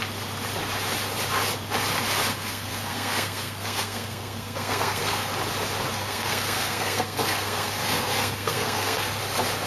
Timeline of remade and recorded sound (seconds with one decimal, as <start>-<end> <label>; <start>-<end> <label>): 0.0-2.3 recorded; 2.3-5.3 remade; 5.3-5.9 recorded; 5.9-9.2 remade; 9.2-9.7 recorded